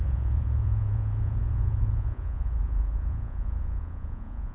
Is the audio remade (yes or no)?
yes